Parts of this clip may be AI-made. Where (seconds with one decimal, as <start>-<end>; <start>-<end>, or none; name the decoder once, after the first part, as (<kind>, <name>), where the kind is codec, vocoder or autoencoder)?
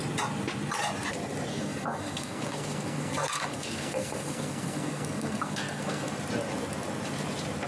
1.5-6.1 (codec, SNAC)